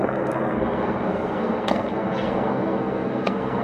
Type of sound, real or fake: fake